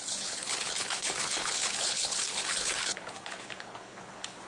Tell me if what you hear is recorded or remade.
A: remade